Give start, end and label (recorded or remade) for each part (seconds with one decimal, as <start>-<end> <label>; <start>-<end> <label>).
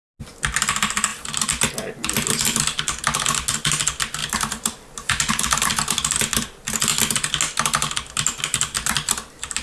0.0-4.2 recorded; 4.2-5.3 remade; 5.3-9.6 recorded